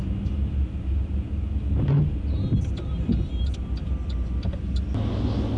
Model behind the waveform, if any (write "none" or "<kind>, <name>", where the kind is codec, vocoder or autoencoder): none